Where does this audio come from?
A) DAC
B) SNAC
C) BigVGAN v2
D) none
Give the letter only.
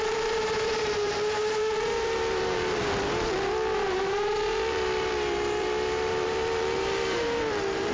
C